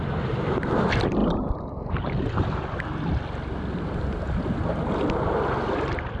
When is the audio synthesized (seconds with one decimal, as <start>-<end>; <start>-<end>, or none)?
none